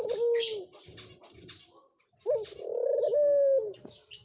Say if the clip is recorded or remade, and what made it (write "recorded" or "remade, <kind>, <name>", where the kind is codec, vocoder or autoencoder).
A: recorded